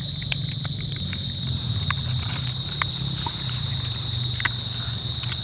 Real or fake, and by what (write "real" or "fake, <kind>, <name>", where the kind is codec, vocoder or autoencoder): real